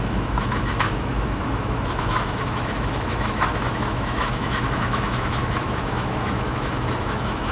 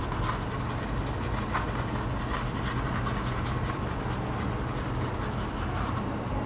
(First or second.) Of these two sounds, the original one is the second